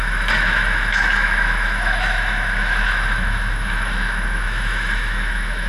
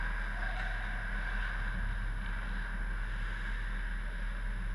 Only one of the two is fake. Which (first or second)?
first